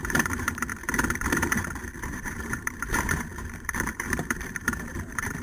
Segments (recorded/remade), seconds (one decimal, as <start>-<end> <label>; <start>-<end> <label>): 0.0-0.7 remade; 0.7-2.0 recorded; 2.0-5.4 remade